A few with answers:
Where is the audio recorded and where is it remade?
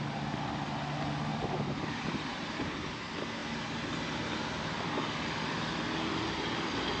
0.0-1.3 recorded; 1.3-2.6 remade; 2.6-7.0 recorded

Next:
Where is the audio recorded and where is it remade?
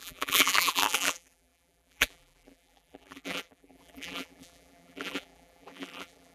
0.0-6.3 remade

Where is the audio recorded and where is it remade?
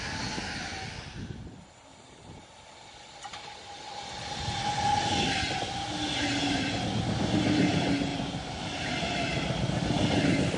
0.0-8.1 recorded; 8.1-8.9 remade; 8.9-10.6 recorded